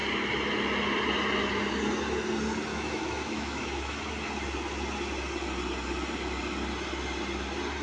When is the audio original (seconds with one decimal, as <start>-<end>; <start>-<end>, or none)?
0.0-2.7; 4.1-7.8